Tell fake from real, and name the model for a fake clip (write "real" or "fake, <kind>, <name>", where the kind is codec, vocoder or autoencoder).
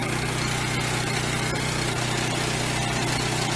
real